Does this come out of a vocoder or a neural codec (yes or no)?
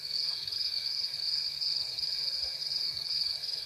yes